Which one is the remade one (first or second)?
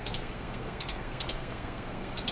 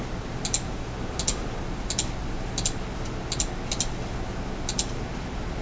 first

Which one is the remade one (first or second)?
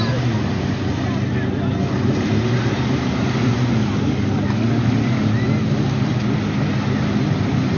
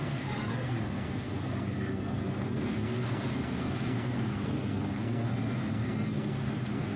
second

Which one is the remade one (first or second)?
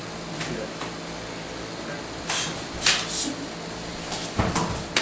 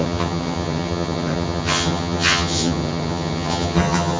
second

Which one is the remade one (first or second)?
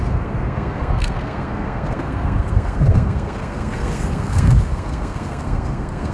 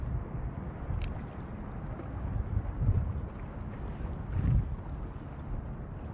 first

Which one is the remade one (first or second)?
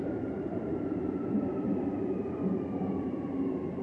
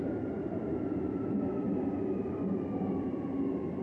first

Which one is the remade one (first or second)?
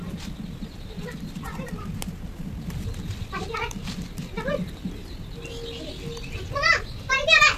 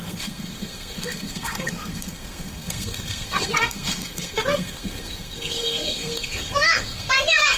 second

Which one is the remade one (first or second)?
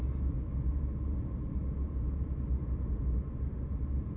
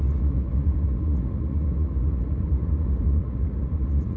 second